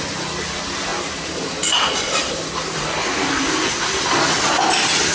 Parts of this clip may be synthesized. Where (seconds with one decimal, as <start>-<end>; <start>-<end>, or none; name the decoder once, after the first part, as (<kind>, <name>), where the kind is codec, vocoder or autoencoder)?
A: none